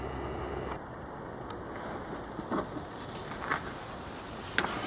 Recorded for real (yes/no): yes